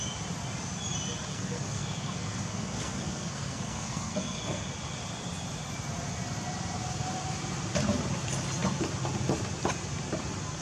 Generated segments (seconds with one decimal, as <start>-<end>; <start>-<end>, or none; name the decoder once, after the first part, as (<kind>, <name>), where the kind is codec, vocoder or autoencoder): 1.3-4.7 (codec, SNAC)